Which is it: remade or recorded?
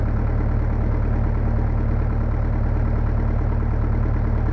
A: recorded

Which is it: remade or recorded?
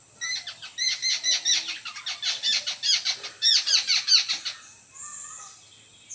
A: recorded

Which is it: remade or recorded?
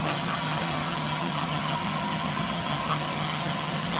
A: remade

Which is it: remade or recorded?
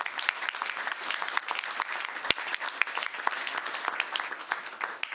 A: recorded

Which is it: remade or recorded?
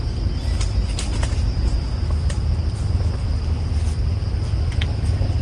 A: recorded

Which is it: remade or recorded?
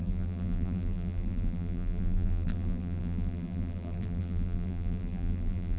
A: remade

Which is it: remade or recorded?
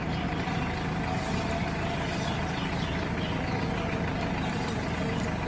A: recorded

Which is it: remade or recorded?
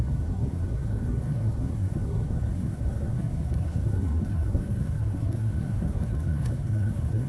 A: remade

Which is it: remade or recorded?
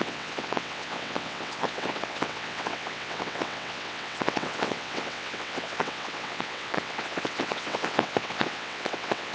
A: remade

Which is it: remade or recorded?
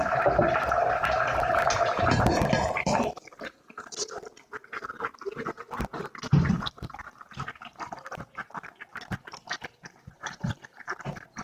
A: remade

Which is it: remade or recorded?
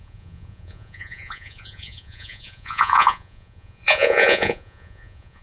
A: remade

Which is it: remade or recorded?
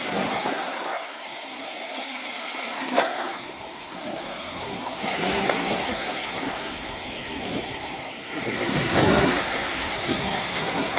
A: remade